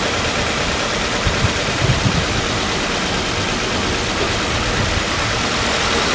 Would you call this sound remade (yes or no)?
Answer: yes